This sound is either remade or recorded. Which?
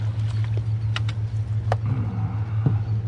recorded